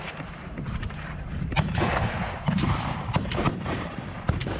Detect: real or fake fake